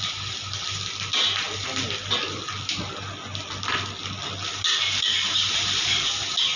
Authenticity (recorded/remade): recorded